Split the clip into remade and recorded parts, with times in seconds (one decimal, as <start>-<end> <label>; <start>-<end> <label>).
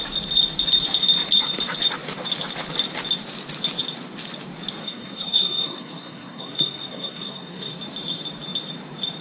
0.0-4.8 recorded; 4.8-7.7 remade; 7.7-9.2 recorded